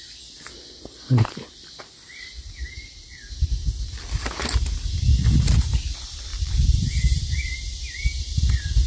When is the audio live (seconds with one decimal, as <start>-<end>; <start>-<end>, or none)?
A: 0.0-6.3; 8.5-8.9